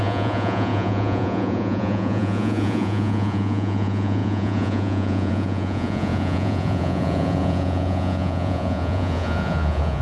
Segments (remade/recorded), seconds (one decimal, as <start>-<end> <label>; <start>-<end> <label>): 0.0-10.0 remade